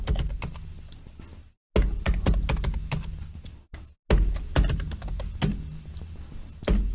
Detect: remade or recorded recorded